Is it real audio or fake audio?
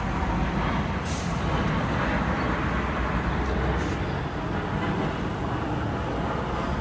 real